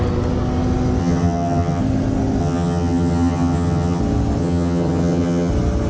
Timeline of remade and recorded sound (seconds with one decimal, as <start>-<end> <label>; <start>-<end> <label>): 0.0-1.0 recorded; 1.0-1.8 remade; 1.8-2.4 recorded; 2.4-4.0 remade; 4.0-4.4 recorded; 4.4-5.5 remade; 5.5-5.9 recorded